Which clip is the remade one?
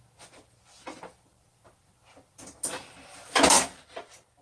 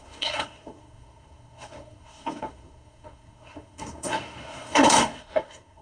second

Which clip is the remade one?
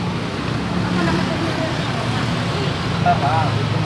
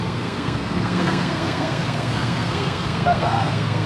second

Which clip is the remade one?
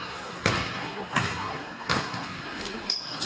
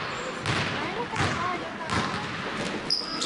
first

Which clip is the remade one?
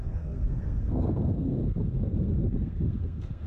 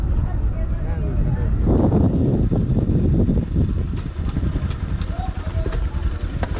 first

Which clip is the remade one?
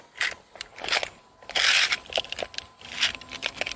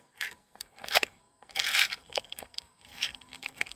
second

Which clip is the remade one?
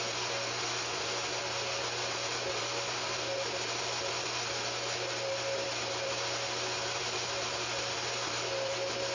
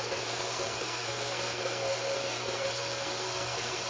second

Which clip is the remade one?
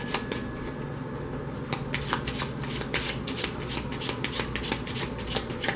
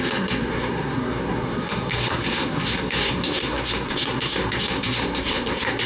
second